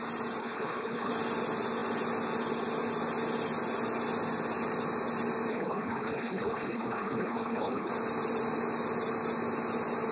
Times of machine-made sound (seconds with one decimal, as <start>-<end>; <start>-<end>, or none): 0.4-1.1; 5.5-7.9